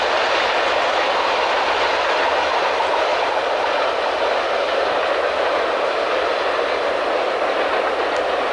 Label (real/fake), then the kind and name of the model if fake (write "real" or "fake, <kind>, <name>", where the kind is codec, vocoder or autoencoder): real